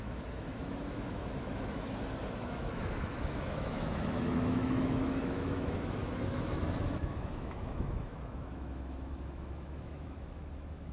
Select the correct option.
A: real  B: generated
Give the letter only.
B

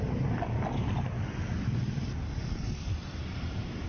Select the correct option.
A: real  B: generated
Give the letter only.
A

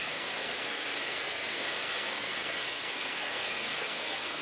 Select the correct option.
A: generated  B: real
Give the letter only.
A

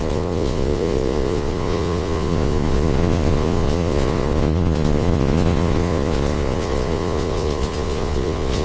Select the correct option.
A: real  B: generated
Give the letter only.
B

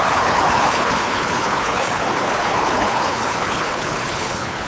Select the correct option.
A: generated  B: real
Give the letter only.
A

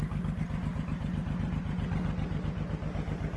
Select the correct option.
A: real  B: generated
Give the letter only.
A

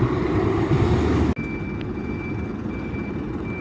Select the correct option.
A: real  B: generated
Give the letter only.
A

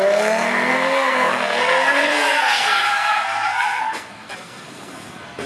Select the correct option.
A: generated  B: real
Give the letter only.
A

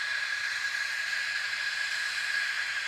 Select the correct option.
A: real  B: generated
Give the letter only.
A